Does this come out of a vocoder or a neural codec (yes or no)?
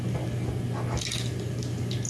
no